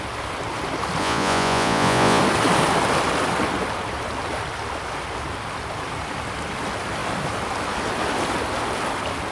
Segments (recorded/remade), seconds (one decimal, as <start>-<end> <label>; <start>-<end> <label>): 0.0-1.0 recorded; 1.0-2.2 remade; 2.2-9.3 recorded